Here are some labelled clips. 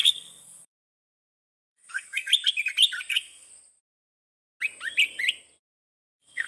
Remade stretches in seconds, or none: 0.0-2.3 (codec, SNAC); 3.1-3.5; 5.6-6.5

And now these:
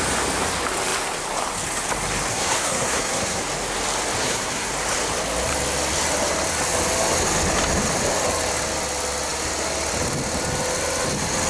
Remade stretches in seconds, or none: 2.3-3.4 (codec, SNAC); 4.2-4.7

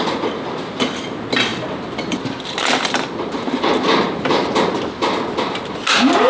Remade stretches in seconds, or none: none